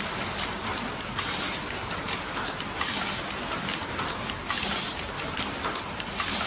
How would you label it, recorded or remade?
remade